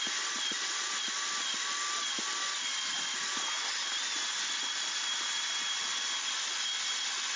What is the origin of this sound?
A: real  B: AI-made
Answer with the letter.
A